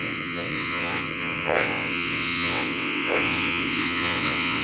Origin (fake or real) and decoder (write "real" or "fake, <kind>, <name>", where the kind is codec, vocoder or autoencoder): fake, vocoder, WaveNeXt